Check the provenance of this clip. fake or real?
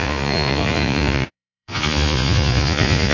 fake